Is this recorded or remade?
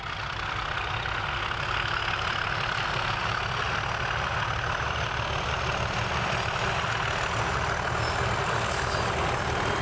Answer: recorded